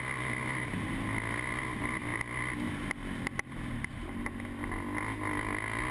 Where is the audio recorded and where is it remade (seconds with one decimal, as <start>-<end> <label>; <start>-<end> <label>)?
0.0-5.9 recorded